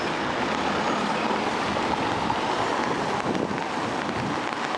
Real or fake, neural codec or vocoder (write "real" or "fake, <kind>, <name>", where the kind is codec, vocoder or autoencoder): real